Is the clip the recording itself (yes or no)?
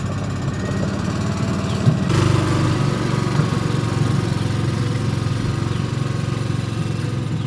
yes